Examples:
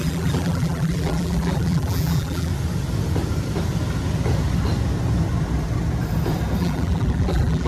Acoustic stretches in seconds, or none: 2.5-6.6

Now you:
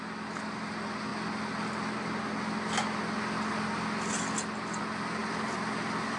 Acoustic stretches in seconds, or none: 0.0-5.2

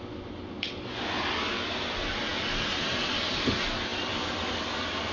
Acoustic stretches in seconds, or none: 0.0-3.9; 4.5-5.1